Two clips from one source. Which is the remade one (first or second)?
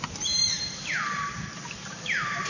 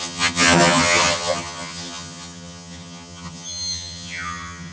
second